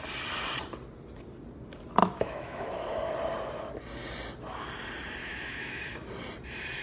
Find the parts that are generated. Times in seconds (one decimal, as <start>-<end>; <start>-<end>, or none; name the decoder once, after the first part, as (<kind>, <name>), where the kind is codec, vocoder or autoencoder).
2.0-3.1 (autoencoder, DAC-VAE); 5.2-6.1